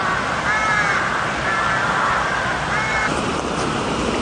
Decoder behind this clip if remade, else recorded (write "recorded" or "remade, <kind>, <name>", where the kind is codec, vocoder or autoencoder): recorded